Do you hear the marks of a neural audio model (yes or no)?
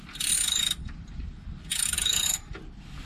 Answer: no